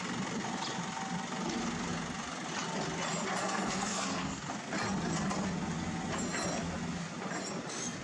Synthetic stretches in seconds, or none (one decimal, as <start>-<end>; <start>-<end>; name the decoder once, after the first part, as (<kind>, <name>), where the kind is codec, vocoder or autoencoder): 3.4-4.7 (codec, SNAC)